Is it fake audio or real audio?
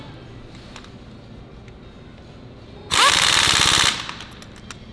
real